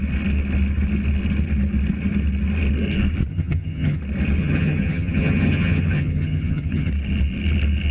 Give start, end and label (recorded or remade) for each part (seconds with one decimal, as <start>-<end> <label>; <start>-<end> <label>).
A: 0.0-3.3 recorded; 3.3-4.0 remade; 4.0-4.4 recorded; 4.4-6.9 remade; 6.9-7.9 recorded